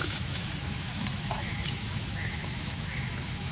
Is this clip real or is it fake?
fake